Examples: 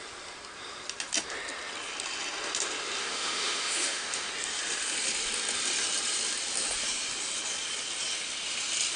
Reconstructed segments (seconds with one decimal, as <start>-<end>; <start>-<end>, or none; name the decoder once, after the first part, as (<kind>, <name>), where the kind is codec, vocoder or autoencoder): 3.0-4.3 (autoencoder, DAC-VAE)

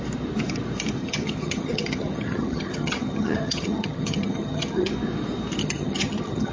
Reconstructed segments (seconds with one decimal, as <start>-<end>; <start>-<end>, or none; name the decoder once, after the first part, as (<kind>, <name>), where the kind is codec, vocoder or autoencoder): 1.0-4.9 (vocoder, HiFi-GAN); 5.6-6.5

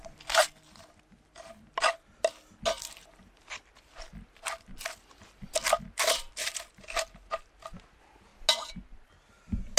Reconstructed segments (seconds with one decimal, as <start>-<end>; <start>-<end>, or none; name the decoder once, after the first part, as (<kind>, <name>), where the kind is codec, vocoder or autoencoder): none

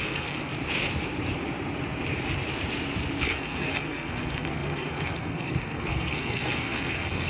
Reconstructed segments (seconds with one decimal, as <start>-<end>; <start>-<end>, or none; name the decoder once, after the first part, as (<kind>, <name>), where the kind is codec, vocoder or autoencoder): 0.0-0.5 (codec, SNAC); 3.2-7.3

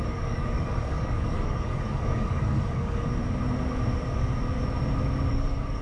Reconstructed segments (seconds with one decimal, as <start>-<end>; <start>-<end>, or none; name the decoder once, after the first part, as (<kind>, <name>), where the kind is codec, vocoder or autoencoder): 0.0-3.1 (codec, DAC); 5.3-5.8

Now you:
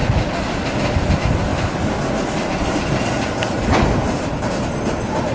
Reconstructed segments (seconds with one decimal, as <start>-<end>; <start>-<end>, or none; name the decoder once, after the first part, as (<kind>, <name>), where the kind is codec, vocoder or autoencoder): 0.0-0.8 (vocoder, BigVGAN v2); 1.5-2.8; 4.0-4.7

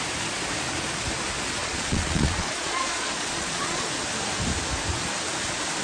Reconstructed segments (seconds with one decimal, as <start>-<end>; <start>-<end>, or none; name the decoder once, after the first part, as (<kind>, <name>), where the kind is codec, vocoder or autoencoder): 1.6-3.9 (vocoder, Vocos)

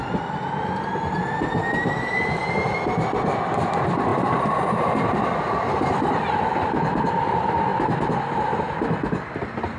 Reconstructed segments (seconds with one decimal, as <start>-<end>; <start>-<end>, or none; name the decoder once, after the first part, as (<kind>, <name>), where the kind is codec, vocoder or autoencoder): 0.0-2.4 (vocoder, BigVGAN v2); 3.1-7.7; 8.2-9.8